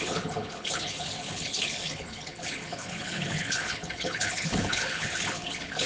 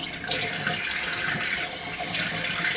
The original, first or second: second